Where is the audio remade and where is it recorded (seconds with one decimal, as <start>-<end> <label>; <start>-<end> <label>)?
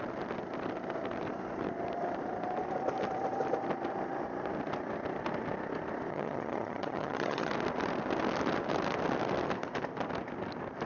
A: 0.0-6.1 recorded; 6.1-7.5 remade; 7.5-10.9 recorded